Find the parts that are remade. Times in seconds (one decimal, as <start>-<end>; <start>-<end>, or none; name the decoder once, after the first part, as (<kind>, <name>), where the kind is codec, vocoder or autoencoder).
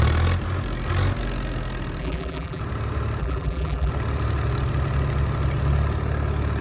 2.0-2.6 (vocoder, BigVGAN v2); 3.2-3.9